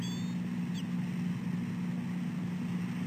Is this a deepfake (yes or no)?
no